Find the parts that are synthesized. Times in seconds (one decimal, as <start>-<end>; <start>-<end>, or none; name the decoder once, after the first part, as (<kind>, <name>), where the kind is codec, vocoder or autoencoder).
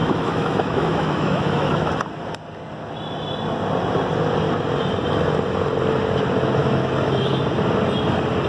0.0-1.9 (autoencoder, DAC-VAE); 6.6-7.4